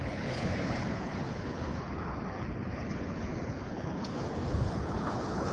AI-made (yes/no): yes